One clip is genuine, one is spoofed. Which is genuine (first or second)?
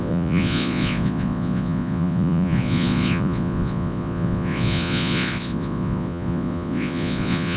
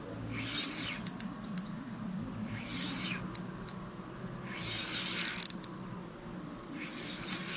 second